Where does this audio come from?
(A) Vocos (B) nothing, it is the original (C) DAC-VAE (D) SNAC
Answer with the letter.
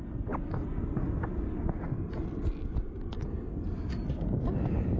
B